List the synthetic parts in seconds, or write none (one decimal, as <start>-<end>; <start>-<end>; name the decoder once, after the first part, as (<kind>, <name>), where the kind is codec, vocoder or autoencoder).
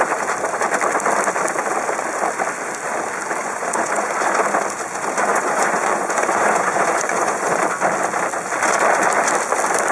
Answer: 3.4-4.1 (vocoder, Vocos); 5.3-7.6